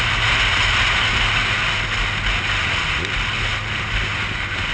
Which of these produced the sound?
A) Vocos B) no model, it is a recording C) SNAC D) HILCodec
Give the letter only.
B